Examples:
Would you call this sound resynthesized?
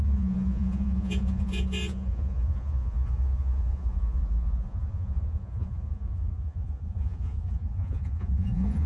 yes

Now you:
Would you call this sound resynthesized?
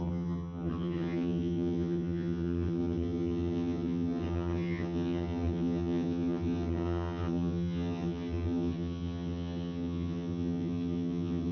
yes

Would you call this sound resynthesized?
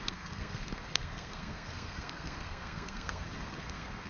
yes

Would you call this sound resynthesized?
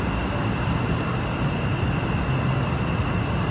no